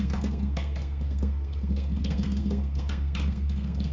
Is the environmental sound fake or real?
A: fake